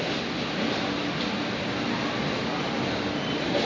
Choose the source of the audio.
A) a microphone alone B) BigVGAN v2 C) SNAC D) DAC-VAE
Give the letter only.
A